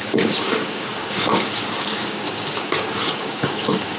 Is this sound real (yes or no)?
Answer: no